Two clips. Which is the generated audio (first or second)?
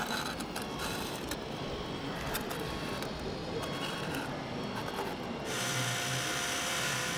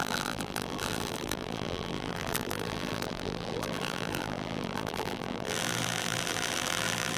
second